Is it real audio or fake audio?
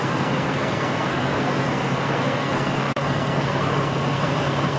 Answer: fake